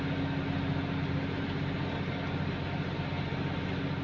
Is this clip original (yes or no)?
yes